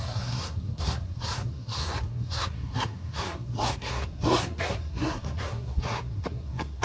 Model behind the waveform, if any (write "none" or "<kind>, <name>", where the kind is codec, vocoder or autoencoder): codec, SNAC